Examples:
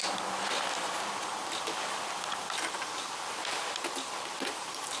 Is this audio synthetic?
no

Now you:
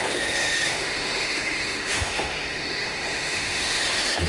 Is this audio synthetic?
yes